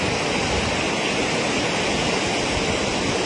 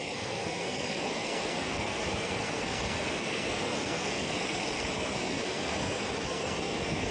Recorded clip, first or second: first